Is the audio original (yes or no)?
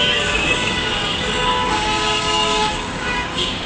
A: no